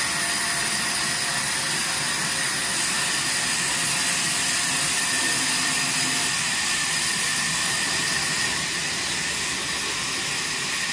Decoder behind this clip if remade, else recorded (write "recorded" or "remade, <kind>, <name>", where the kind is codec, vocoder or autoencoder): recorded